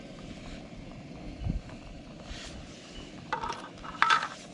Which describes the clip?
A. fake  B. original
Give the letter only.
B